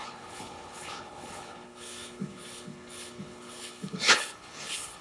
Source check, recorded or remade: remade